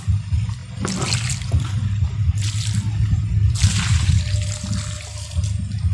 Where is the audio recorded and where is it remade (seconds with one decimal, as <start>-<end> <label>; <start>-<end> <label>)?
0.0-5.9 recorded